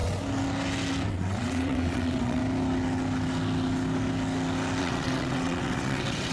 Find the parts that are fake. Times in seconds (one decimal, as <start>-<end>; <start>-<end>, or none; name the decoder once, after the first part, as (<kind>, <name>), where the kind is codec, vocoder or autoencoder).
1.1-2.4 (vocoder, WaveNeXt); 4.8-6.3